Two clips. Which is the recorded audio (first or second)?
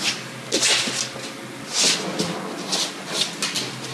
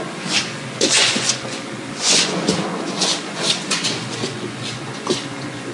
first